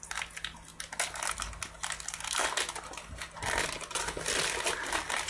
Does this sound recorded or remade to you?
recorded